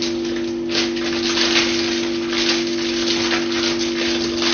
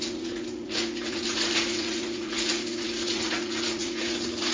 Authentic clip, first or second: first